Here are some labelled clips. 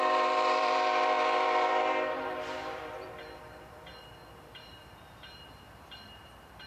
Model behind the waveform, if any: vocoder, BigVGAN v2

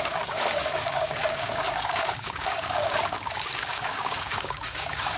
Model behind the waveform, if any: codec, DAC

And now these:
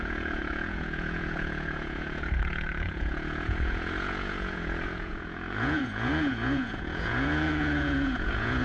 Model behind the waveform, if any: vocoder, Vocos